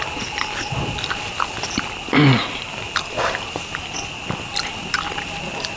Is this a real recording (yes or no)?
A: yes